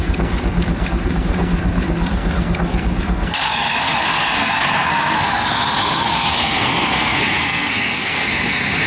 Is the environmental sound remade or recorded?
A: remade